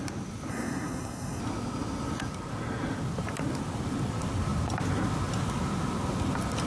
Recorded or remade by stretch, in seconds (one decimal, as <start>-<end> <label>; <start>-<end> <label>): 0.0-0.5 recorded; 0.5-1.4 remade; 1.4-6.7 recorded

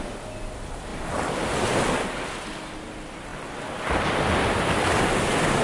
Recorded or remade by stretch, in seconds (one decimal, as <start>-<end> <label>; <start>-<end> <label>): 0.0-5.6 recorded

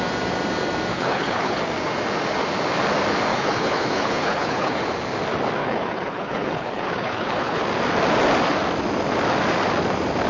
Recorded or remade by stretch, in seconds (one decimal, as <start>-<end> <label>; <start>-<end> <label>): 0.0-0.9 recorded; 0.9-1.6 remade; 1.6-3.3 recorded; 3.3-4.8 remade; 4.8-5.6 recorded; 5.6-7.6 remade; 7.6-10.3 recorded